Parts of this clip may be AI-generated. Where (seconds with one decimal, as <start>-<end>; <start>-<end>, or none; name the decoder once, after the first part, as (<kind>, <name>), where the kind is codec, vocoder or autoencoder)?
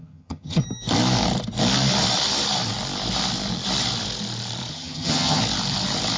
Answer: 0.0-0.6 (vocoder, HiFi-GAN); 4.7-5.4